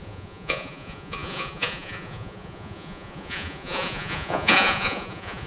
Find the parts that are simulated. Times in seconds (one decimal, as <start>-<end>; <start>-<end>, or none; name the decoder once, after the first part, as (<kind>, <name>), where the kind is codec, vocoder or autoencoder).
0.0-5.5 (vocoder, Vocos)